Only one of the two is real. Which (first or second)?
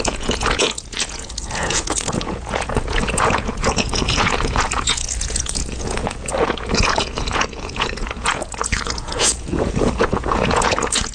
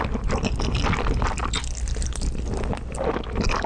second